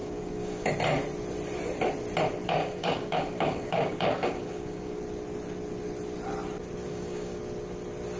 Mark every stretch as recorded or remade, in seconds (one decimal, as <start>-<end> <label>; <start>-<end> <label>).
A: 0.0-0.7 remade; 0.7-2.6 recorded; 2.6-5.0 remade; 5.0-6.9 recorded; 6.9-7.4 remade; 7.4-8.2 recorded